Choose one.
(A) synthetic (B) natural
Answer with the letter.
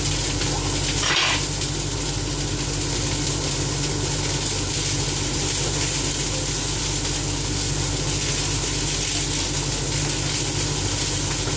B